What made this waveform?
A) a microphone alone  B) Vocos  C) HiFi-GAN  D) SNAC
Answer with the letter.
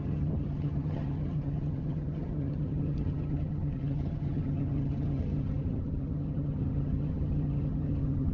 C